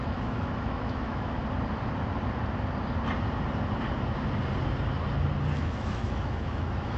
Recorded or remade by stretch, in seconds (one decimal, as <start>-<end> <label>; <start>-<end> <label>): 0.0-1.4 remade; 1.4-5.6 recorded; 5.6-7.0 remade